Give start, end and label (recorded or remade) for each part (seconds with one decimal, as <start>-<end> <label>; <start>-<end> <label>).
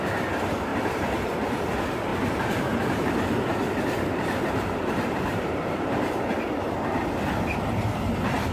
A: 0.0-0.7 recorded; 0.7-1.3 remade; 1.3-2.1 recorded; 2.1-6.2 remade; 6.2-8.5 recorded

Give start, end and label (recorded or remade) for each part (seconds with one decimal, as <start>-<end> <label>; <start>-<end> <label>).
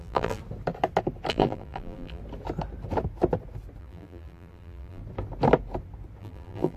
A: 0.0-0.4 remade; 0.4-1.3 recorded; 1.3-2.2 remade; 2.2-3.8 recorded; 3.8-5.0 remade; 5.0-6.2 recorded; 6.2-6.8 remade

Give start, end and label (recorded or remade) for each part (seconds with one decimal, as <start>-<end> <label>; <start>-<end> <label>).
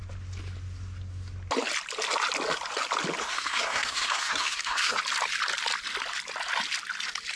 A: 0.0-3.2 recorded; 3.2-5.0 remade; 5.0-7.4 recorded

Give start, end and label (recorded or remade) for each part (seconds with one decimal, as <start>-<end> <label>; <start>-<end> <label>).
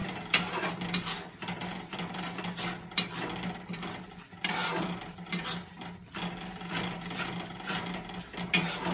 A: 0.0-8.9 recorded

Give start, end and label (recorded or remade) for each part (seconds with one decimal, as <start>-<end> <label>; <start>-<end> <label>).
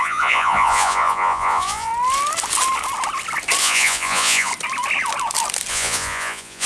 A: 0.0-1.9 remade; 1.9-3.6 recorded; 3.6-4.5 remade; 4.5-5.7 recorded; 5.7-6.7 remade